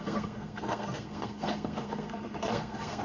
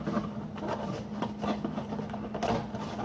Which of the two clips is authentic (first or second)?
second